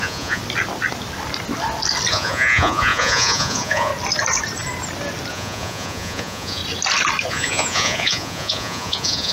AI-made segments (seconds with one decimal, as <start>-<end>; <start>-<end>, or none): 0.0-0.4; 2.1-3.9; 5.3-6.6; 7.3-9.3